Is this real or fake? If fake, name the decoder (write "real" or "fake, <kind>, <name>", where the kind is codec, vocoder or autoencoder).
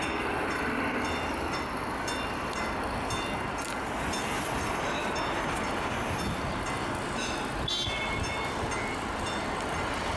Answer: real